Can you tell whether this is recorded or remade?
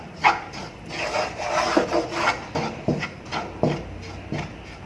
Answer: recorded